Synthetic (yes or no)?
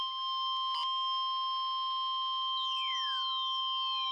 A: no